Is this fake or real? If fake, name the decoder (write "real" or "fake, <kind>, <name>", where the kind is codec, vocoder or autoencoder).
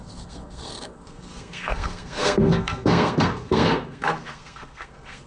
fake, codec, SNAC